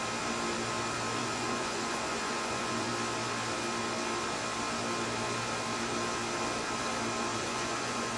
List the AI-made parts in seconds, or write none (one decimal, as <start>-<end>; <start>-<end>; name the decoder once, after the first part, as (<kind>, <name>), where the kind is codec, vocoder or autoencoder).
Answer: 1.2-2.9 (vocoder, Vocos); 7.3-8.2